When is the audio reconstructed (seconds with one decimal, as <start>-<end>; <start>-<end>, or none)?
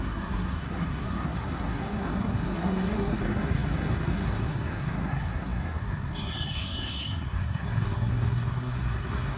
0.0-9.4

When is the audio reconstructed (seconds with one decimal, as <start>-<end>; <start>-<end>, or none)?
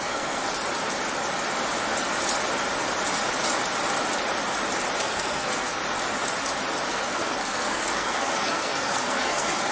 0.0-0.4; 5.0-5.8; 6.9-9.7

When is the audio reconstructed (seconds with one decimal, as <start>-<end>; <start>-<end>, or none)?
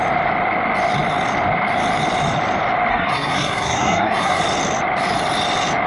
2.9-4.4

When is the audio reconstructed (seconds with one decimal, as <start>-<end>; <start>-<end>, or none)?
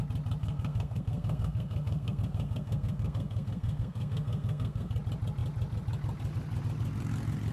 0.4-4.9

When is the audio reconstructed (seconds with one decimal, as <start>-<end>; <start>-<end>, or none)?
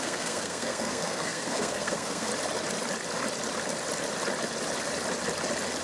0.0-2.3